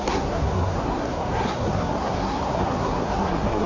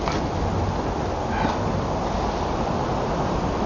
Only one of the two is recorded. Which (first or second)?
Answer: second